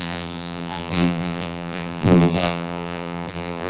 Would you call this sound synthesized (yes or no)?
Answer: yes